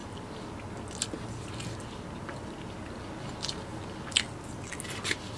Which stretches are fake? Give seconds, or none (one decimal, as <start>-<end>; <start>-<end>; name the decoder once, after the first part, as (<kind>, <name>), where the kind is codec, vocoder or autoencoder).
none